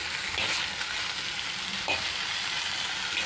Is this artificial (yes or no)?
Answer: no